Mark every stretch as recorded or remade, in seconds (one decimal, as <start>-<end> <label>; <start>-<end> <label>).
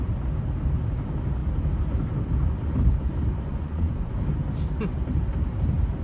0.0-3.5 recorded; 3.5-4.1 remade; 4.1-6.0 recorded